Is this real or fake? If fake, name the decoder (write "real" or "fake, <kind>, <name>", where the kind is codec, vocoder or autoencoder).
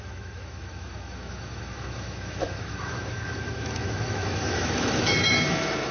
fake, autoencoder, DAC-VAE